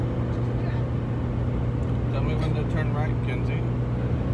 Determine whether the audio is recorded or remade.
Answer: recorded